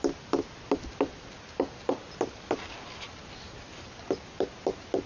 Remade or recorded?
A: recorded